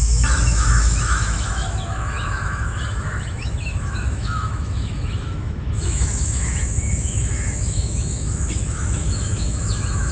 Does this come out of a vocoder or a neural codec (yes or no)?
yes